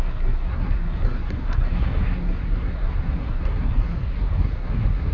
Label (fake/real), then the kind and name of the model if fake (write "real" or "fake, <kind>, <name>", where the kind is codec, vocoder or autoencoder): fake, codec, SNAC